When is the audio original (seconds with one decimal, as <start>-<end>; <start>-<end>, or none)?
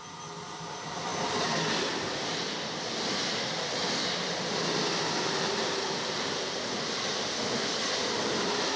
1.1-3.3